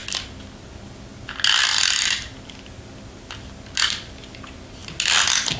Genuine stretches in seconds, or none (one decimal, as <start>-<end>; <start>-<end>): 0.0-5.6